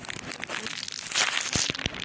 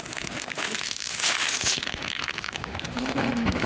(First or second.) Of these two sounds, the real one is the first